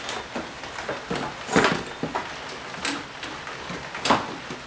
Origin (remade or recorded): recorded